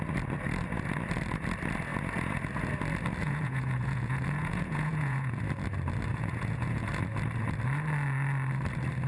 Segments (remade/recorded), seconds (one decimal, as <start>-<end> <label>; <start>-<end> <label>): 0.0-3.2 recorded; 3.2-5.4 remade; 5.4-6.1 recorded; 6.1-6.9 remade; 6.9-9.1 recorded